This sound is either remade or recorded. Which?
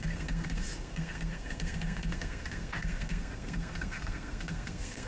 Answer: remade